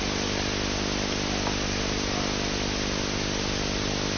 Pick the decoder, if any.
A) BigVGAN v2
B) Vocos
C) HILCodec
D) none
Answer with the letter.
D